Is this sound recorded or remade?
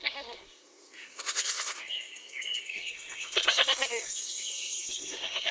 remade